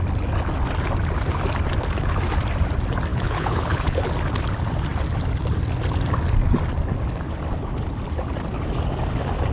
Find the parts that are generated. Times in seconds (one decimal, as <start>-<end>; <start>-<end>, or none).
3.1-4.0